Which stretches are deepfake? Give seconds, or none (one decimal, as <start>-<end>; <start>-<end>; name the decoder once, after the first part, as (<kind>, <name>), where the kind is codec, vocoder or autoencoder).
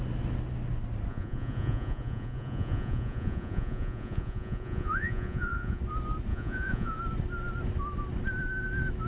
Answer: 1.1-5.8 (vocoder, Vocos); 6.3-7.0